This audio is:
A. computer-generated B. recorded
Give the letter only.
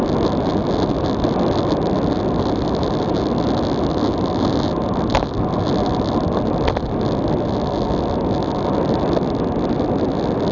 B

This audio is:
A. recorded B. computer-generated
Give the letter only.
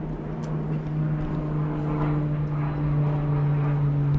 A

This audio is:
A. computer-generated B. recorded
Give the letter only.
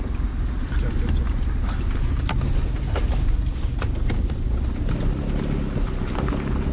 B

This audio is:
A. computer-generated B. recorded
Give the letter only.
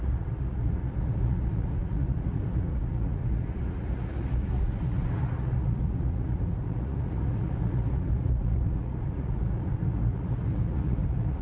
A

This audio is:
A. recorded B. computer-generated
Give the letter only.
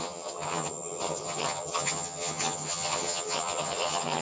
B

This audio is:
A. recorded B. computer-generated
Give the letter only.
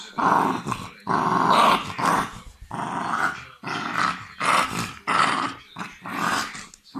A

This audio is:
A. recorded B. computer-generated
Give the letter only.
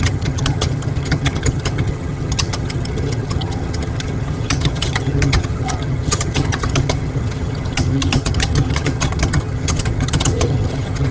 B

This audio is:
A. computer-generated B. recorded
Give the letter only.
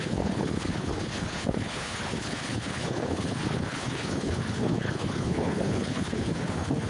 A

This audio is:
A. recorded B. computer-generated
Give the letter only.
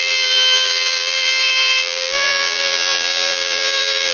B